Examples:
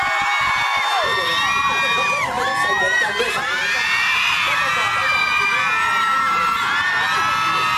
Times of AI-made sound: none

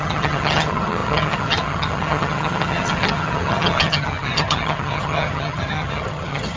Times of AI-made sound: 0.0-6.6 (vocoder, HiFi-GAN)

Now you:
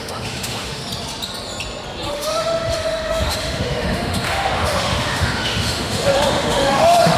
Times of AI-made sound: 0.0-0.8 (autoencoder, DAC-VAE); 2.1-7.2

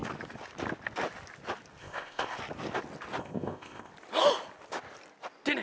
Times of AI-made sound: 1.8-2.4 (codec, ZipCodec); 3.2-3.9

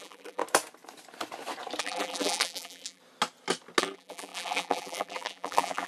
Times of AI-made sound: 0.0-0.4 (vocoder, BigVGAN v2); 1.8-3.0; 3.8-5.9

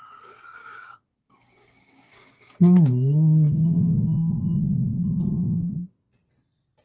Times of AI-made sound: 0.6-4.4 (codec, DAC); 4.9-5.6

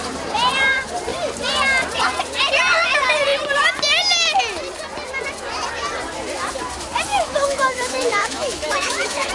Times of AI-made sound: 7.1-9.3 (autoencoder, DAC-VAE)